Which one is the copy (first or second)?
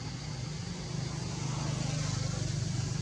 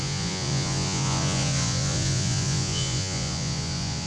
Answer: second